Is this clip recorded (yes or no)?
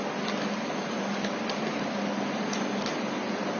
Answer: yes